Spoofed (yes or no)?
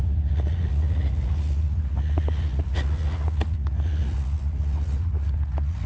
yes